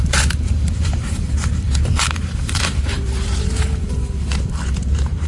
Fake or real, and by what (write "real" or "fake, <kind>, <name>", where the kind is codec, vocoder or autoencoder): fake, vocoder, BigVGAN v2